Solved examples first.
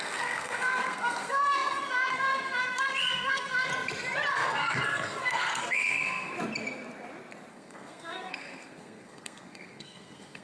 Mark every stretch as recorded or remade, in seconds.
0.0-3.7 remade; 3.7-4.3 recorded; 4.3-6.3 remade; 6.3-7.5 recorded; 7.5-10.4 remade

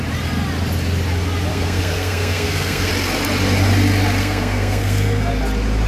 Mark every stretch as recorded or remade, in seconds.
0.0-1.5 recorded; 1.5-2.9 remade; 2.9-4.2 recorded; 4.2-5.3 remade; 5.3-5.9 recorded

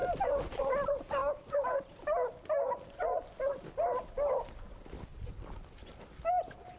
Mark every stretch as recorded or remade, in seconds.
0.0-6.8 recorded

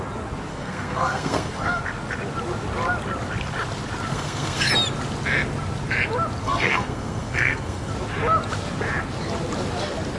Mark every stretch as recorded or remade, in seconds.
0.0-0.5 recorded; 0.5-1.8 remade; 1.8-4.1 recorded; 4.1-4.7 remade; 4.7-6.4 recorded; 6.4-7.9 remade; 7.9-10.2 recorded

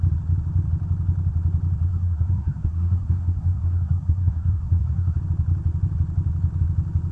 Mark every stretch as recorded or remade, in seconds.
0.0-1.9 recorded; 1.9-5.2 remade; 5.2-7.1 recorded